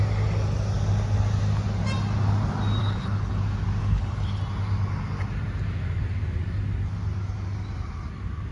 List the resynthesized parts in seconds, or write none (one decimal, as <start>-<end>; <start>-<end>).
2.8-3.3; 3.8-4.4